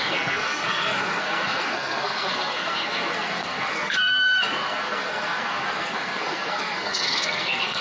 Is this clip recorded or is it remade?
remade